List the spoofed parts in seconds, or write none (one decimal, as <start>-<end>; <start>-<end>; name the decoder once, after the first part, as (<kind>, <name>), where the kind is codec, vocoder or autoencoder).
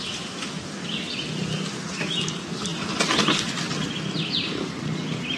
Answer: none